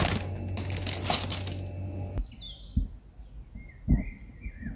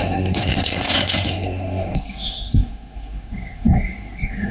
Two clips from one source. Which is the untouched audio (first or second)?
first